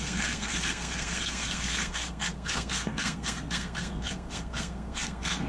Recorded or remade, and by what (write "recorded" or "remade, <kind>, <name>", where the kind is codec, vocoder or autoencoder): remade, codec, SNAC